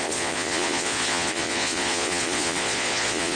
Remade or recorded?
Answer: remade